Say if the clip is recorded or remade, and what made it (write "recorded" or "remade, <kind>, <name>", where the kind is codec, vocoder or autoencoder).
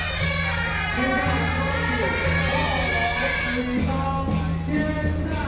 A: recorded